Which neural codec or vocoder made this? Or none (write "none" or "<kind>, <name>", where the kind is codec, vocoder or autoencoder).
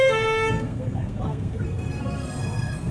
codec, SNAC